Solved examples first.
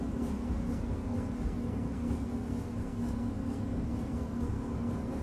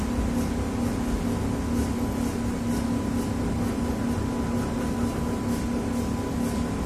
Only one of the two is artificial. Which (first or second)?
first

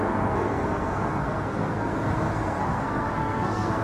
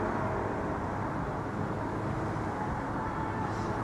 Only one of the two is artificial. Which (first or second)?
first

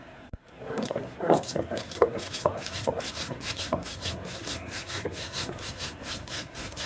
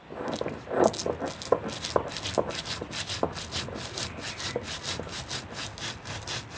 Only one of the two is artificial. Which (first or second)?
first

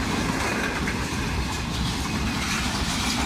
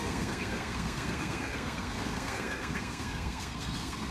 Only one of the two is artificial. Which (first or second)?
second